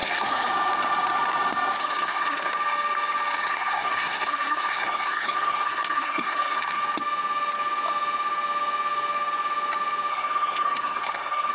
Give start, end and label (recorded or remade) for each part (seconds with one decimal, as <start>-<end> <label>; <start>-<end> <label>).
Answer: 0.0-0.5 remade; 0.5-1.8 recorded; 1.8-2.5 remade; 2.5-3.4 recorded; 3.4-6.8 remade; 6.8-10.1 recorded; 10.1-11.5 remade